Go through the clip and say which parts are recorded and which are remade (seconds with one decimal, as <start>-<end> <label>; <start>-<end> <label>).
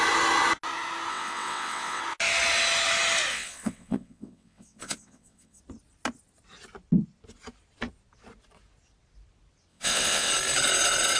0.0-1.1 recorded; 1.1-2.0 remade; 2.0-3.3 recorded; 3.3-5.6 remade; 5.6-9.7 recorded; 9.7-10.3 remade; 10.3-11.2 recorded